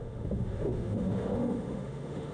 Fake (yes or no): yes